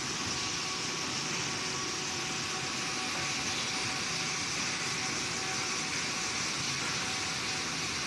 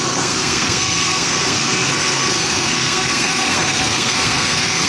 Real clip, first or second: first